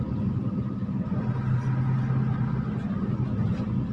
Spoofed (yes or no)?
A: no